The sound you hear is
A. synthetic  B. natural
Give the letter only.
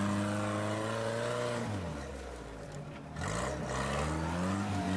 B